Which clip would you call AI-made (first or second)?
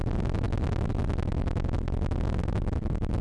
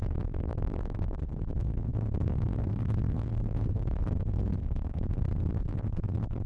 second